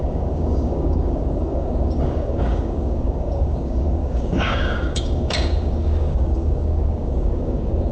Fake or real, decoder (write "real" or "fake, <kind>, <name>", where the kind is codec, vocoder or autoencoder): fake, codec, DAC